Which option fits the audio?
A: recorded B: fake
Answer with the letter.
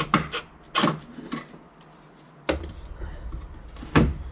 A